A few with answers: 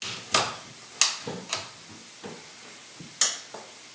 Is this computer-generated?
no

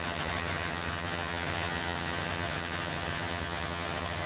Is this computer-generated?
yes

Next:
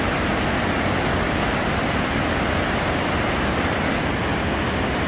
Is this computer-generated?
no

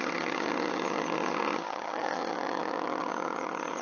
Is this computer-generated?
yes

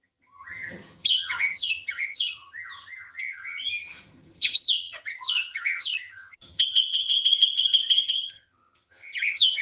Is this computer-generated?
yes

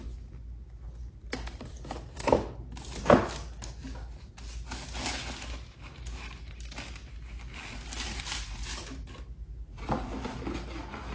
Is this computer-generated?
no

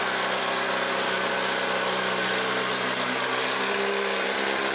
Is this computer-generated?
no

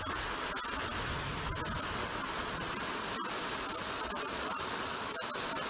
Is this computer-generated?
no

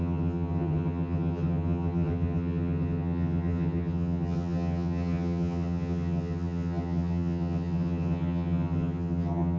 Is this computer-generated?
yes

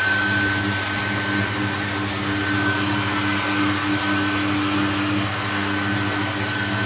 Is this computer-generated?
no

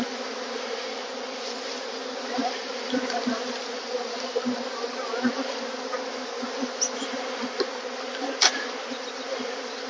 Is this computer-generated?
no